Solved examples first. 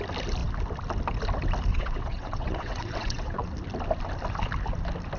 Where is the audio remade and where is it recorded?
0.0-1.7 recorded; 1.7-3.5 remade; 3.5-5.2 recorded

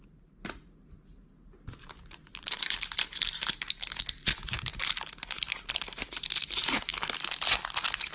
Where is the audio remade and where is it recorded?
0.0-6.9 remade; 6.9-8.1 recorded

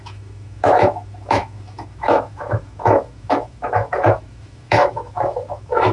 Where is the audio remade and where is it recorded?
0.0-5.9 remade

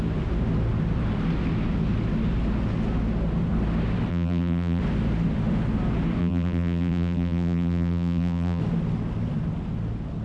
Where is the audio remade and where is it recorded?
0.0-4.1 recorded; 4.1-4.8 remade; 4.8-6.2 recorded; 6.2-8.6 remade; 8.6-10.2 recorded

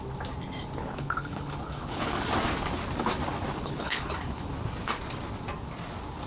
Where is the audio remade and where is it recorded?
0.0-0.8 recorded; 0.8-2.3 remade; 2.3-3.5 recorded; 3.5-4.5 remade; 4.5-6.3 recorded

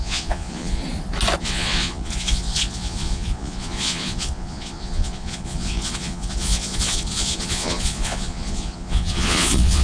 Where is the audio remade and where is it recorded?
0.0-0.8 remade; 0.8-1.4 recorded; 1.4-9.8 remade

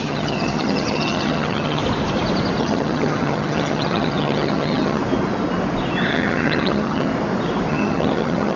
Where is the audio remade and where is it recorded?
0.0-1.8 remade; 1.8-2.6 recorded; 2.6-5.0 remade; 5.0-6.1 recorded; 6.1-7.1 remade; 7.1-7.7 recorded; 7.7-8.6 remade

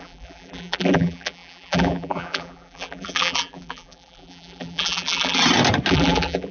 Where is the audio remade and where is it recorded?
0.0-5.4 remade; 5.4-5.9 recorded; 5.9-6.5 remade